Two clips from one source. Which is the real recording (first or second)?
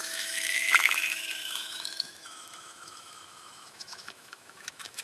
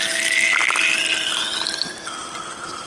second